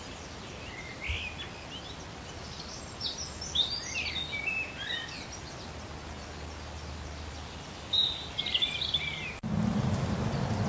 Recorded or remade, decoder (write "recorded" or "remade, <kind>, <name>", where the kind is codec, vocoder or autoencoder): recorded